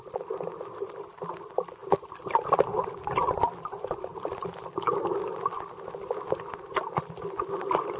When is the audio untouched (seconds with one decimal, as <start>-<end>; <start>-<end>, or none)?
0.0-8.0